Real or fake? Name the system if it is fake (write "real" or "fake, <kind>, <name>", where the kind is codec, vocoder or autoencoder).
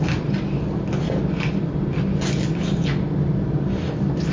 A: real